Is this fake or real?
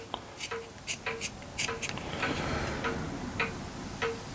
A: real